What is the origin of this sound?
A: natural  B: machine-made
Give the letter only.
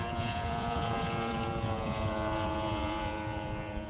B